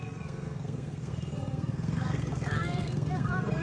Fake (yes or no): yes